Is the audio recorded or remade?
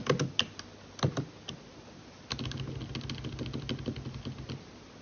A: recorded